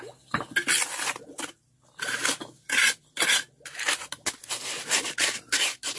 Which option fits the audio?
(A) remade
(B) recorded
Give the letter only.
B